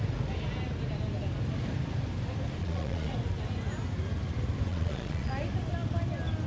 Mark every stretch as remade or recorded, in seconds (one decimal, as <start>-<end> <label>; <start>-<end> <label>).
0.0-2.6 recorded; 2.6-3.1 remade; 3.1-4.7 recorded; 4.7-5.3 remade; 5.3-6.5 recorded